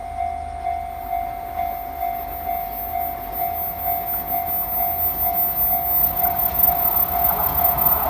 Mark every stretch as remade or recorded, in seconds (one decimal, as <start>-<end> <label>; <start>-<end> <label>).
0.0-6.0 recorded; 6.0-8.1 remade